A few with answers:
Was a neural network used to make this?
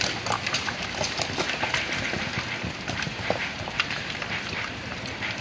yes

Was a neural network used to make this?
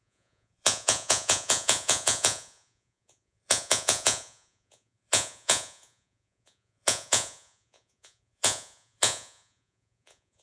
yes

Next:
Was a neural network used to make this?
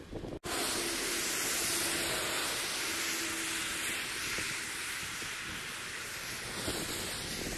no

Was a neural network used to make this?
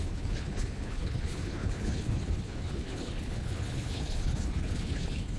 yes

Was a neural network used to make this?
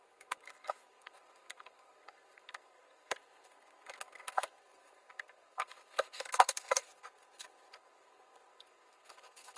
yes